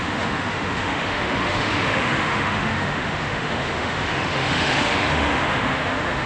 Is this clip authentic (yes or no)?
no